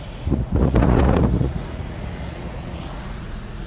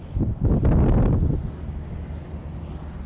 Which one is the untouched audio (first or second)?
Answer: second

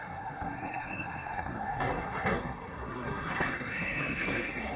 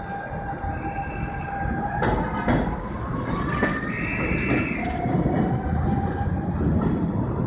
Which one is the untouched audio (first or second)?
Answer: second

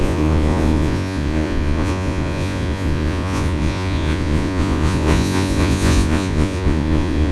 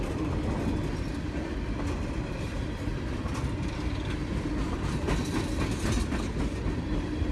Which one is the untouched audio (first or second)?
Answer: second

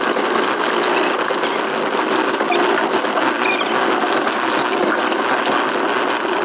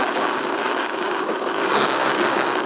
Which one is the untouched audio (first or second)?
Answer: first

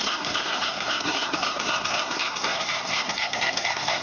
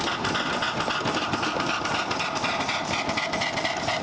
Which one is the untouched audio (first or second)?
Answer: second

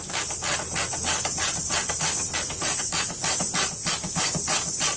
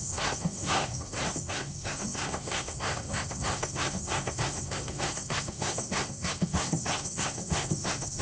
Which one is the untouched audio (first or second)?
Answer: first